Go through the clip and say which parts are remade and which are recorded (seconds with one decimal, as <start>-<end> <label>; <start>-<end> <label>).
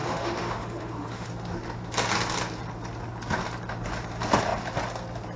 0.0-1.3 remade; 1.3-5.4 recorded